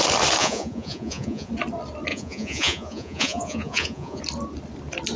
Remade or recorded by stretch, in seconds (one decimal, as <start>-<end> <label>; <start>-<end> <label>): 0.0-0.4 recorded; 0.4-1.5 remade; 1.5-2.1 recorded; 2.1-4.2 remade; 4.2-5.2 recorded